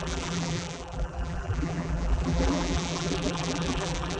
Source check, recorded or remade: remade